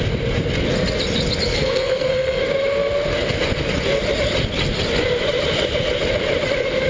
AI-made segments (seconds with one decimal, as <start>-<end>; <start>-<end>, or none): 1.5-2.4